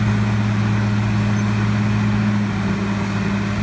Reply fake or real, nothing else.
real